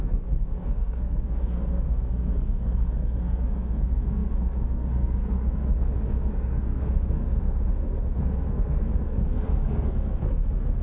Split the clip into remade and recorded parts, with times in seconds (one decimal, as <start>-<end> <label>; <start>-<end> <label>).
0.0-10.8 remade